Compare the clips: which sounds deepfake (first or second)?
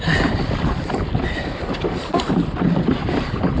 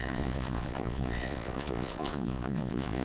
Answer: second